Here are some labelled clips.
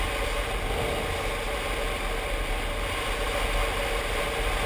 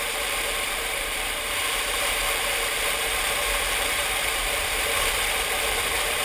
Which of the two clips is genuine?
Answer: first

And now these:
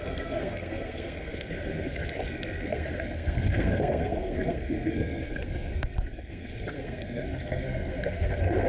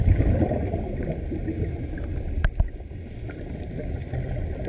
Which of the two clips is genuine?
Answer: second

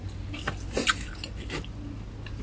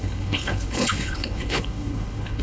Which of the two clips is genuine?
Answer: first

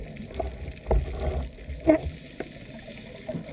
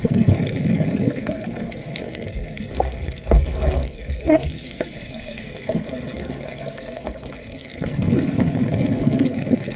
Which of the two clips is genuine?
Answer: first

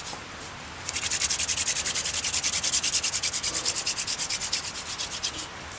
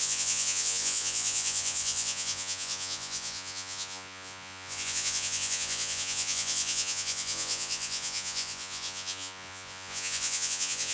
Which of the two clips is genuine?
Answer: first